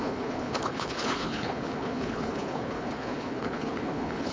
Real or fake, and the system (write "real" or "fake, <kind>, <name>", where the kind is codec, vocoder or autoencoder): fake, codec, HILCodec